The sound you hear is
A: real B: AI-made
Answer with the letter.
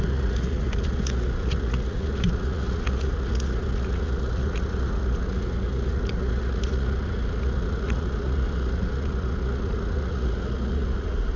B